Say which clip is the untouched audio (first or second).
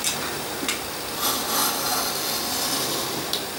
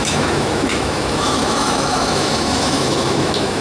first